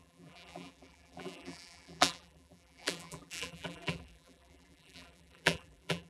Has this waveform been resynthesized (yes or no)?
yes